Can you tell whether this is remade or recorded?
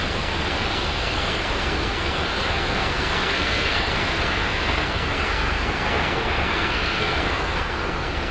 remade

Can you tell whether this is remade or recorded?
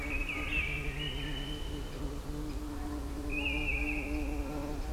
recorded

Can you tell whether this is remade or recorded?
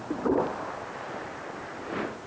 remade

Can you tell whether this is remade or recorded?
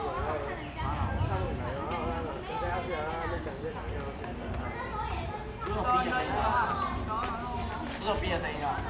recorded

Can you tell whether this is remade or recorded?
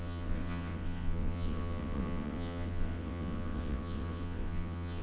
remade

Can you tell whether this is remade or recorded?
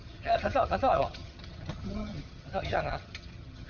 remade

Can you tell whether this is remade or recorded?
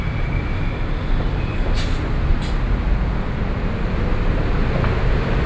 recorded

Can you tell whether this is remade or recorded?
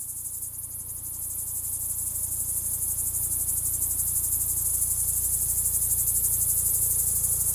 recorded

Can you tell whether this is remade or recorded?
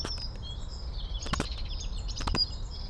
remade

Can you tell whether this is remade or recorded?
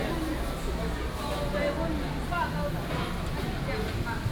recorded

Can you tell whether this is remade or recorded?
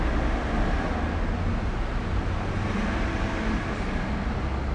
recorded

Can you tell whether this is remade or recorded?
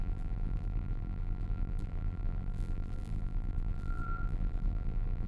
remade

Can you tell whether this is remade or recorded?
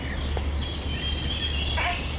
recorded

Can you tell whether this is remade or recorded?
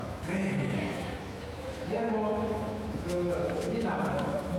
remade